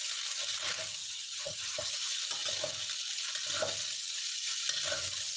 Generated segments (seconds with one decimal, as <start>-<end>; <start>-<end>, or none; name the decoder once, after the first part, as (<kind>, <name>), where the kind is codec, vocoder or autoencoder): 1.0-1.9 (vocoder, HiFi-GAN)